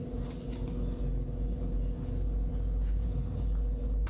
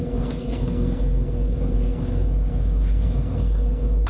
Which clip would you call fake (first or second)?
second